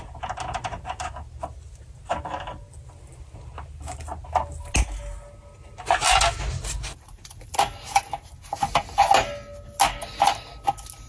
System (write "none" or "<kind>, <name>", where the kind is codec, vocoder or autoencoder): none